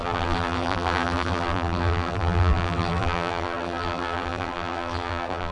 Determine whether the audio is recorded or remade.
remade